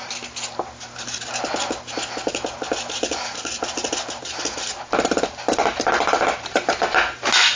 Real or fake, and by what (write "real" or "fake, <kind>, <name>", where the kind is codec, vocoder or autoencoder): real